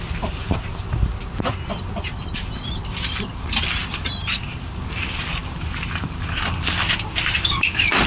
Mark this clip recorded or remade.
recorded